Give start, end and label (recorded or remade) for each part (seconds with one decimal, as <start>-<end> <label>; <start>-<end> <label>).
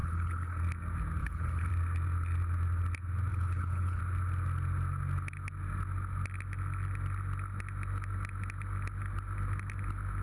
0.0-0.6 remade; 0.6-1.2 recorded; 1.2-1.7 remade; 1.7-3.3 recorded; 3.3-4.0 remade; 4.0-10.2 recorded